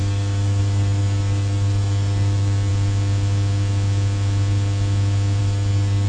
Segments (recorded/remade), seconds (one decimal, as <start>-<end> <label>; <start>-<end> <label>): 0.0-2.7 remade; 2.7-5.4 recorded; 5.4-6.1 remade